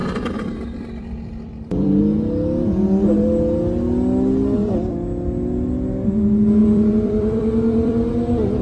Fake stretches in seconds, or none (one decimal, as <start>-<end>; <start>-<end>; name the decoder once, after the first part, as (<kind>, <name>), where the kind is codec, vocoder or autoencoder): 0.0-2.0 (vocoder, BigVGAN v2); 6.6-8.1